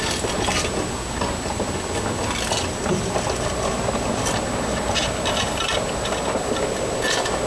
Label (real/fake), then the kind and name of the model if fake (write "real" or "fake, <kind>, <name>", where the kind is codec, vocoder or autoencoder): real